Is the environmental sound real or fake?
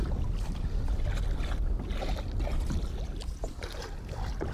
real